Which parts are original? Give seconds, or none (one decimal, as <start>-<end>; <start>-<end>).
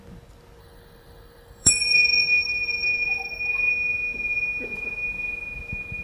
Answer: 0.0-0.6; 3.7-6.0